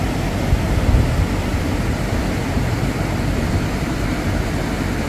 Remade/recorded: remade